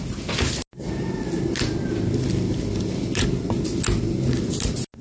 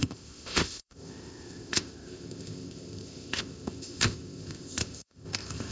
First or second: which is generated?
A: second